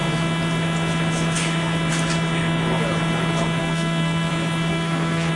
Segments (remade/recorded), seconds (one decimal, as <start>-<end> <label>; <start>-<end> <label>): 0.0-3.6 recorded; 3.6-4.3 remade; 4.3-4.7 recorded; 4.7-5.3 remade